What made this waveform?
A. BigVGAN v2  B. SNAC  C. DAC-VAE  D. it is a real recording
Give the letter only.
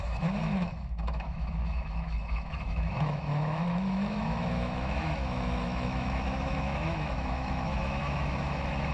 C